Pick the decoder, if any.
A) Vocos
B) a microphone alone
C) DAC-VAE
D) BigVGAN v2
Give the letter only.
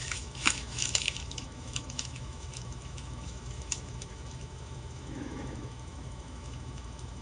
C